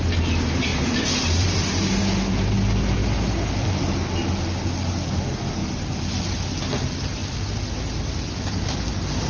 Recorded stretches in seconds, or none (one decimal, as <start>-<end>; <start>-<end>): 0.0-0.7; 2.0-5.6; 6.4-9.3